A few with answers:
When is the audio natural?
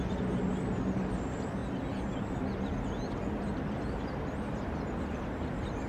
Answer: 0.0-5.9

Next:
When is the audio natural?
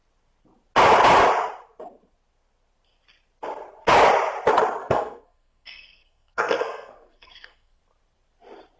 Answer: 0.0-4.8; 7.8-8.8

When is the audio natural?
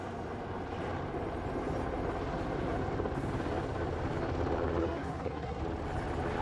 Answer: 0.0-4.8; 5.6-6.4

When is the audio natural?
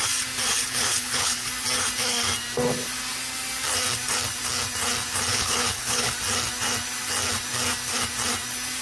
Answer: 0.0-0.5; 1.5-5.3; 6.1-8.8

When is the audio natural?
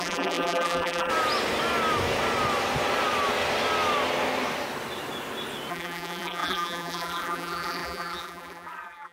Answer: 1.1-5.7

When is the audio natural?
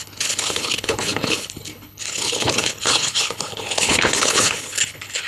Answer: none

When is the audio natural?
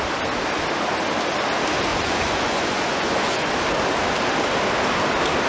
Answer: 0.0-1.9; 3.5-5.5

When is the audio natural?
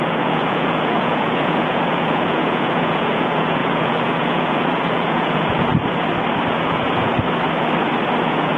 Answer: 5.7-6.5; 7.1-8.2